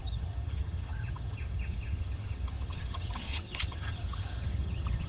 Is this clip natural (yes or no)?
no